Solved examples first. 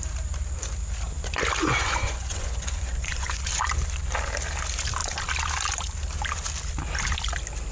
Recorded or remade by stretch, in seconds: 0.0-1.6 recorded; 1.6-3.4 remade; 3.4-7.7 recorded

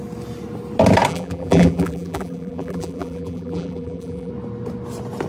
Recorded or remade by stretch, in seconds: 0.0-1.1 recorded; 1.1-4.3 remade; 4.3-5.3 recorded

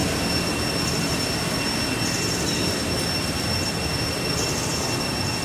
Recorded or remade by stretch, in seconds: 0.0-5.4 recorded

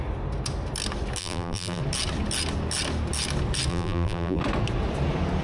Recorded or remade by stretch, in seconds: 0.0-1.2 recorded; 1.2-1.8 remade; 1.8-3.7 recorded; 3.7-4.4 remade; 4.4-5.4 recorded